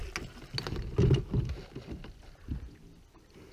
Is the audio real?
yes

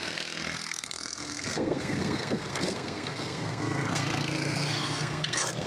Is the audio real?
no